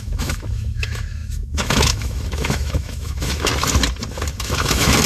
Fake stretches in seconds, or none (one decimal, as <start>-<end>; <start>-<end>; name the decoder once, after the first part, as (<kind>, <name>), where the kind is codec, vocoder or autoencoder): 0.0-3.5 (autoencoder, DAC-VAE); 4.4-5.1